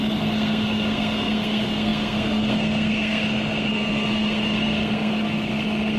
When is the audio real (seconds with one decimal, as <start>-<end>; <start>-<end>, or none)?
none